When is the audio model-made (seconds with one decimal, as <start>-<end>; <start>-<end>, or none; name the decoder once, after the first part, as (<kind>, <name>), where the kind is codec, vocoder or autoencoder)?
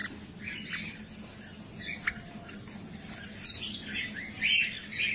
none